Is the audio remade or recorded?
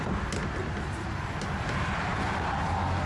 recorded